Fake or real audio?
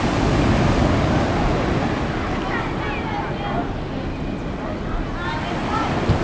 real